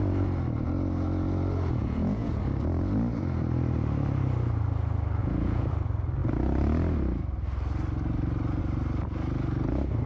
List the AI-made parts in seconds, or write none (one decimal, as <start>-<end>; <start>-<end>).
1.8-2.4; 5.2-5.7